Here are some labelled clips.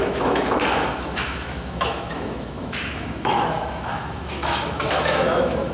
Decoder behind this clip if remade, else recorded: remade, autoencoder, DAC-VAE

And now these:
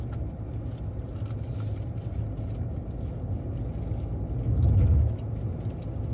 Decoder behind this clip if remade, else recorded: recorded